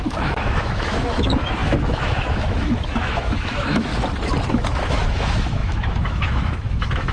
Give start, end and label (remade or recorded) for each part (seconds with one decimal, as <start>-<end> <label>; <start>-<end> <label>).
0.0-3.9 remade; 3.9-4.5 recorded; 4.5-7.1 remade